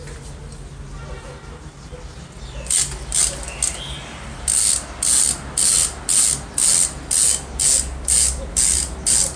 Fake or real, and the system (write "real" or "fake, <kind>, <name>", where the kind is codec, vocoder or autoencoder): real